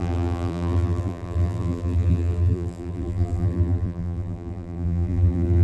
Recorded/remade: remade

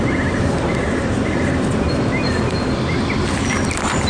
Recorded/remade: recorded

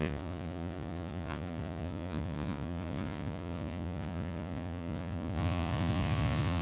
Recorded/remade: remade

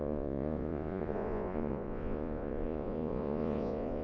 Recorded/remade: remade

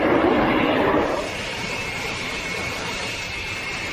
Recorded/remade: remade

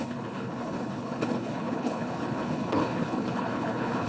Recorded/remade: remade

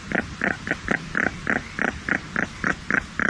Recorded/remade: recorded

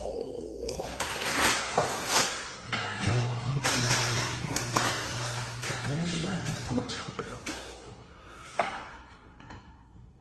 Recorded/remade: remade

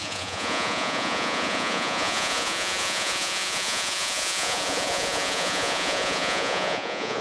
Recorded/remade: remade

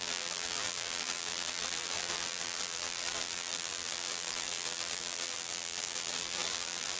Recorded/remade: remade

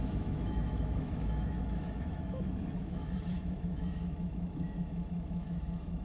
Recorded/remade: remade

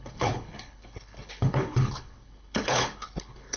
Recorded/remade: remade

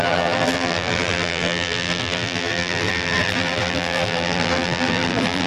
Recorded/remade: remade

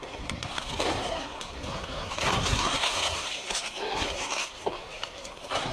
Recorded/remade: remade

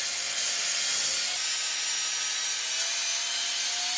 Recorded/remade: recorded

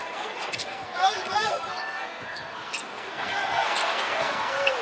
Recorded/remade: remade